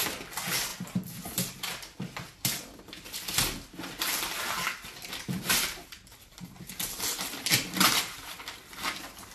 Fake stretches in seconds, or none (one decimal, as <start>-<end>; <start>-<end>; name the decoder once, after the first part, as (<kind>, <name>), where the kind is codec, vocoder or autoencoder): none

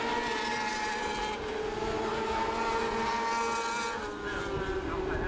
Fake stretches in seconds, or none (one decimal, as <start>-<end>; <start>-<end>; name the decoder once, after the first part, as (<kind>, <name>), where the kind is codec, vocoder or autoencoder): none

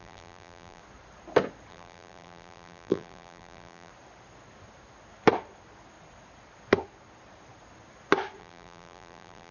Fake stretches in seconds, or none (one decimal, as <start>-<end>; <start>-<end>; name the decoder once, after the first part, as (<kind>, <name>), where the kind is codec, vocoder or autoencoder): 0.0-0.8 (vocoder, BigVGAN v2); 1.7-3.9; 8.4-9.5

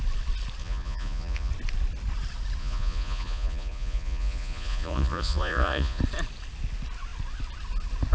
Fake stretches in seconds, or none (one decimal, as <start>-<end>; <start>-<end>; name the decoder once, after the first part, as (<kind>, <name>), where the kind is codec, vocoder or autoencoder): 0.6-1.5 (vocoder, Vocos); 2.6-6.0

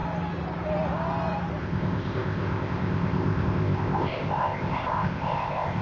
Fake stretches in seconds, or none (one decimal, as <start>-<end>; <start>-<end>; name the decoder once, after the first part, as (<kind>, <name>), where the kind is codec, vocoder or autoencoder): 1.6-5.8 (codec, ZipCodec)

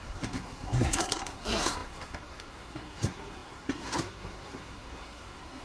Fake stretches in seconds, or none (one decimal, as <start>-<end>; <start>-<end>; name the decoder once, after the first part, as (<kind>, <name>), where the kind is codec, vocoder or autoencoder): 0.0-5.6 (codec, SNAC)

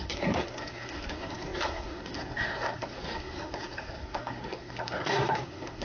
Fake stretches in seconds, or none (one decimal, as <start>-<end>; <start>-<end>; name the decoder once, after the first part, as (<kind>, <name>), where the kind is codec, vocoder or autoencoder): 0.0-5.8 (codec, SNAC)

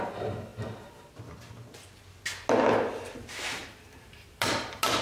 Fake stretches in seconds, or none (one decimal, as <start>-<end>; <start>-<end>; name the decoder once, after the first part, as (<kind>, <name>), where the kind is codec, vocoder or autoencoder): 3.6-5.0 (vocoder, BigVGAN v2)